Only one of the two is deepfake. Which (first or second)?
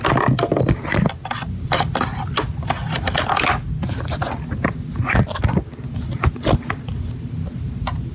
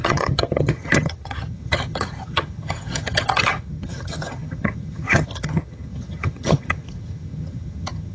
second